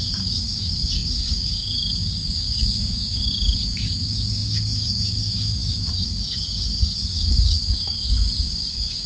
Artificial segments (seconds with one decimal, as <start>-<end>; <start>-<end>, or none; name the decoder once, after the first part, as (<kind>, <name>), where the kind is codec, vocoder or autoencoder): 0.0-9.1 (codec, DAC)